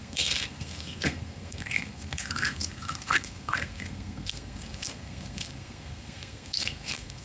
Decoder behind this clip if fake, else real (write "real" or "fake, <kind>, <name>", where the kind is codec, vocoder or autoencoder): fake, codec, SNAC